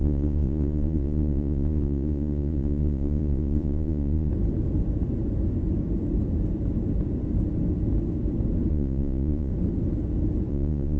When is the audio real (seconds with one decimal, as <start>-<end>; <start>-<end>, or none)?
4.3-8.7; 9.5-10.5